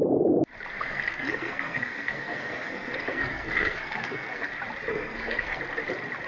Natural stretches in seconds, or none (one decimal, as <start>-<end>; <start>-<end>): 0.0-0.7; 4.5-4.9; 5.6-6.3